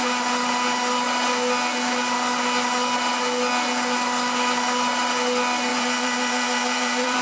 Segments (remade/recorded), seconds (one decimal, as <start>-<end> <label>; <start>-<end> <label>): 0.0-5.7 recorded; 5.7-7.2 remade